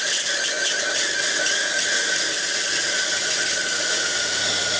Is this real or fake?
real